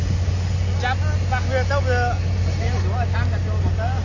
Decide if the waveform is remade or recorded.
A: recorded